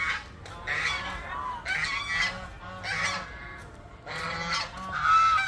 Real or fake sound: real